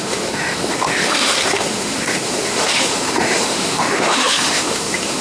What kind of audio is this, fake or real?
fake